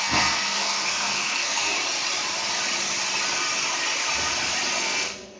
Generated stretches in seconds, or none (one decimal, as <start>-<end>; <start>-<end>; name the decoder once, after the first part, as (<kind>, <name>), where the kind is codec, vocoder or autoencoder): 0.0-1.7 (codec, SNAC); 4.8-5.4